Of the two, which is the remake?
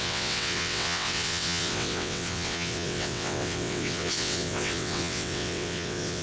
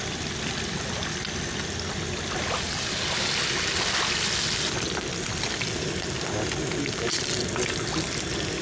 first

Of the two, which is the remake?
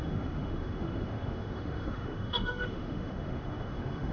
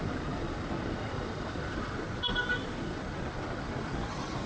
first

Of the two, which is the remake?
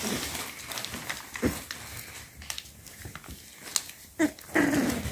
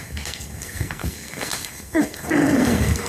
second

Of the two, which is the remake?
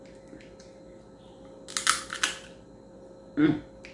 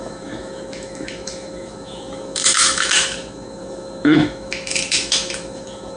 second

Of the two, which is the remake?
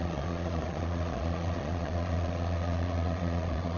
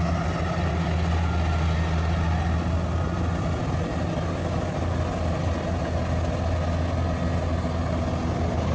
first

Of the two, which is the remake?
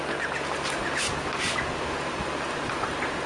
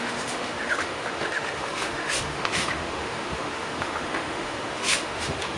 second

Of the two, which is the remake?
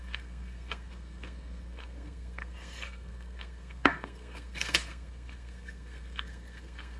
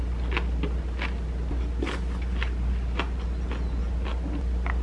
first